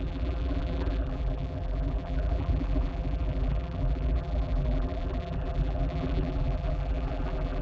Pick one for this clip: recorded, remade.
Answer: remade